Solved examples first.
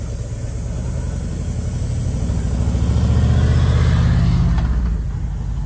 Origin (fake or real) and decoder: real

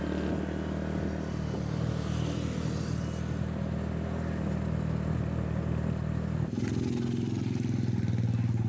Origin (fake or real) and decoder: real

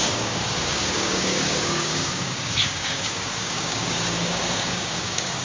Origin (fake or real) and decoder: fake, codec, DAC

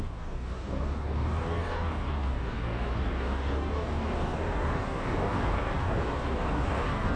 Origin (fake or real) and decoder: fake, codec, DAC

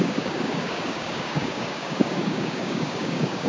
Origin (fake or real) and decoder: fake, codec, DAC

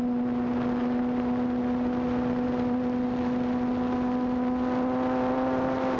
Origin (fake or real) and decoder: real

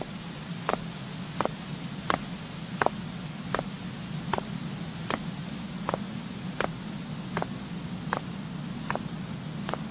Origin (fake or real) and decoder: real